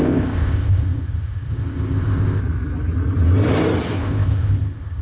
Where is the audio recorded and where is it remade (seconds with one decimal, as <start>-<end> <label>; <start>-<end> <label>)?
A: 0.0-2.4 remade; 2.4-4.0 recorded; 4.0-5.0 remade